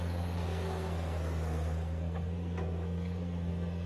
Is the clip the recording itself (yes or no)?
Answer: no